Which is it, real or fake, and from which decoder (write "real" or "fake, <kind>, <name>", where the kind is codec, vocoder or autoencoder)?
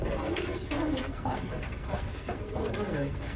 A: fake, codec, SNAC